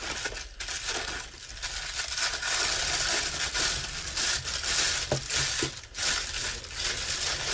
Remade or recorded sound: recorded